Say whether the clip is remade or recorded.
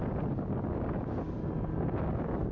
recorded